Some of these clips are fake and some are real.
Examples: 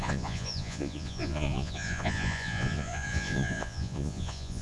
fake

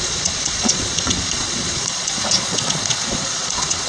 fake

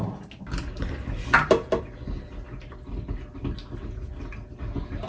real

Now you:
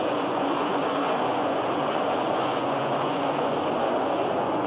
fake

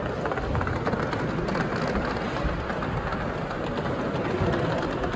real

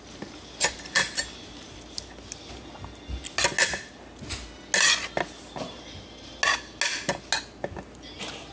real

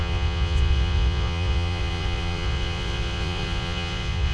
fake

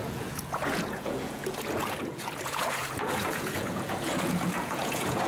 fake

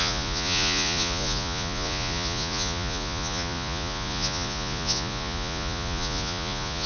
fake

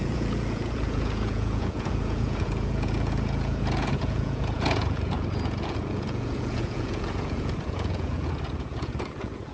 fake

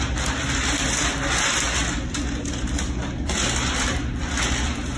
real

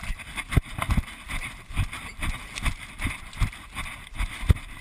real